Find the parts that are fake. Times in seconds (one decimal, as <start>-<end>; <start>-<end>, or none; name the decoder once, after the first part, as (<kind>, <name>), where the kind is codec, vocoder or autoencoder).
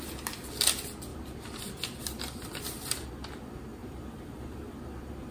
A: 1.1-3.1 (vocoder, BigVGAN v2); 3.8-4.7